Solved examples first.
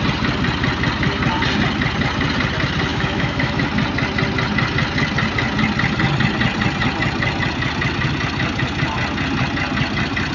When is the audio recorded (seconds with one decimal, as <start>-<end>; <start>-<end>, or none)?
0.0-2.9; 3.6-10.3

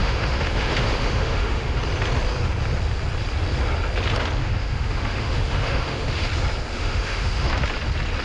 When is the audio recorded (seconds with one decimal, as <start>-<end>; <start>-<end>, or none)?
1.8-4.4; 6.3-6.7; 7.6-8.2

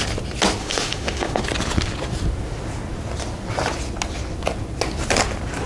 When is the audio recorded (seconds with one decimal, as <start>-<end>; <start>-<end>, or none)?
0.0-0.6; 1.4-5.7